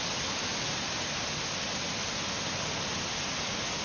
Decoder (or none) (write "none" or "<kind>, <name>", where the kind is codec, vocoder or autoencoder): none